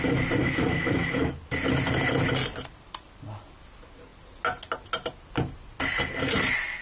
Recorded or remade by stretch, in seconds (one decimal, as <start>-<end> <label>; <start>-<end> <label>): 0.0-0.4 recorded; 0.4-1.3 remade; 1.3-6.8 recorded